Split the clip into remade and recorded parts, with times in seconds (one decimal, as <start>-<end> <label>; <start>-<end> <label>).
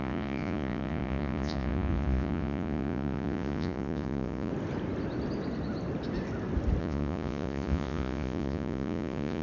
0.0-4.5 remade; 4.5-6.8 recorded; 6.8-9.4 remade